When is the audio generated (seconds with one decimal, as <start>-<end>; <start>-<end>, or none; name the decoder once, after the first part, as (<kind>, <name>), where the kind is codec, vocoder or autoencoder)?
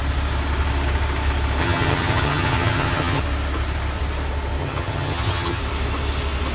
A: 1.6-3.2 (vocoder, HiFi-GAN); 4.6-5.6